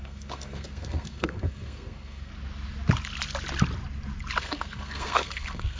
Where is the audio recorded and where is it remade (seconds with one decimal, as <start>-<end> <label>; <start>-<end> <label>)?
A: 0.0-2.3 remade; 2.3-4.4 recorded; 4.4-5.8 remade